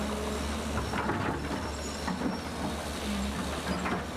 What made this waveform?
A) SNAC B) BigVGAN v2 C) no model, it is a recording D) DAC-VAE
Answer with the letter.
C